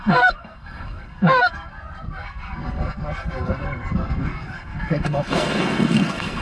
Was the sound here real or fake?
fake